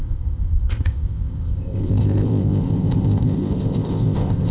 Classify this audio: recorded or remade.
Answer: remade